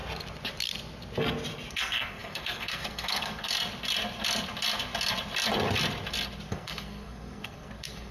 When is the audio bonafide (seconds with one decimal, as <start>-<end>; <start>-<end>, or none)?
0.0-1.7; 3.5-6.5